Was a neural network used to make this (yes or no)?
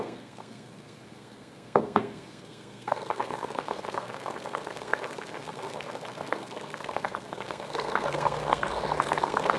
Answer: yes